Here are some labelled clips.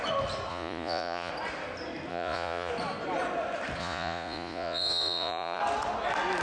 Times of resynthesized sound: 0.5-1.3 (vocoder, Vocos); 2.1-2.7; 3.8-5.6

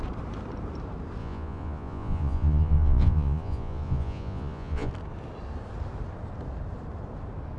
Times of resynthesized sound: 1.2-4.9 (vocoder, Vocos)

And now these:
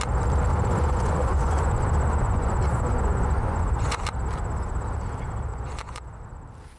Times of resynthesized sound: 0.5-4.0 (vocoder, Vocos); 5.5-6.2

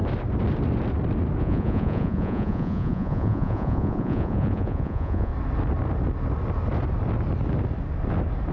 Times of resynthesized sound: 1.4-5.3 (vocoder, Vocos)